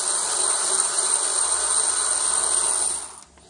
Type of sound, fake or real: real